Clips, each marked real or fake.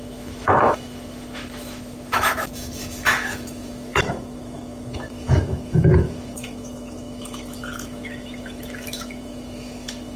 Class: fake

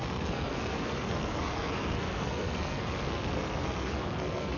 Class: fake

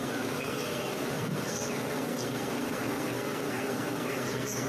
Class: fake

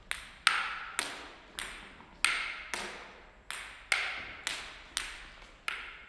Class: real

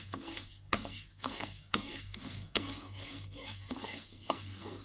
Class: fake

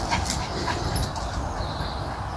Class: real